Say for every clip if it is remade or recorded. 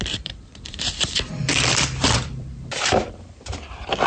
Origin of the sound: remade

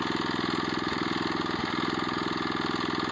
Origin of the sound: recorded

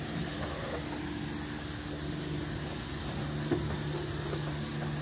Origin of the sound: recorded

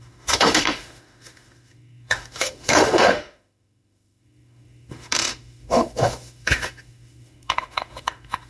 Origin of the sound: remade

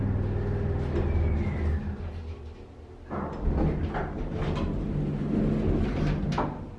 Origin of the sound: recorded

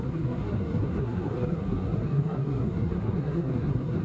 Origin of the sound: remade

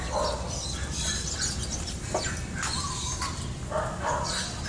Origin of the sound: recorded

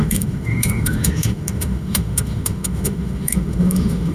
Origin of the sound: remade